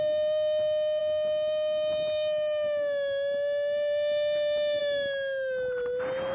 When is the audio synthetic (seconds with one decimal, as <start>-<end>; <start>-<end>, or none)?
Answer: none

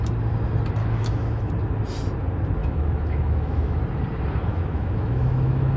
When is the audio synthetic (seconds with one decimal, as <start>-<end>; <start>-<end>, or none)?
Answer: 0.8-1.5; 2.6-3.8; 4.5-5.8

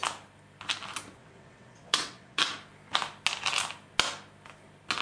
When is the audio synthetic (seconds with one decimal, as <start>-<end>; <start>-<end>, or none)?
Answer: 1.2-2.4